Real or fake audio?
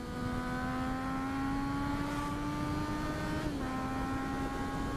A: real